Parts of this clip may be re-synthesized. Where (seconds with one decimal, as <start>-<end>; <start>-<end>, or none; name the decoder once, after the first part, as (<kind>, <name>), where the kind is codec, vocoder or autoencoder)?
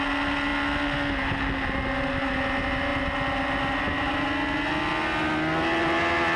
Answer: none